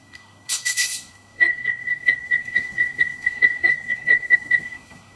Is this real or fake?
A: fake